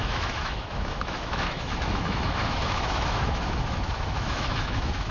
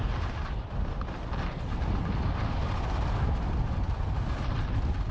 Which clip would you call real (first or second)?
second